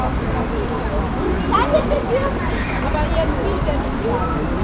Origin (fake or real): real